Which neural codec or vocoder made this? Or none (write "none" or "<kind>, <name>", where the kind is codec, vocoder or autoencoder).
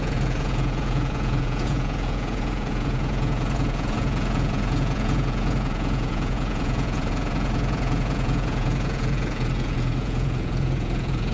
vocoder, Vocos